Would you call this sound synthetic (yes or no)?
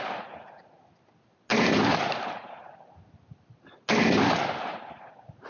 no